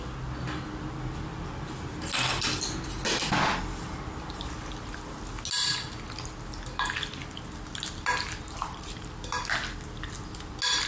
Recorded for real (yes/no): yes